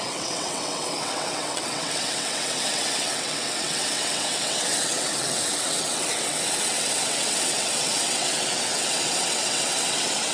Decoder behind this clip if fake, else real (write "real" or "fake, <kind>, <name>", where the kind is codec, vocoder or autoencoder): fake, vocoder, WaveNeXt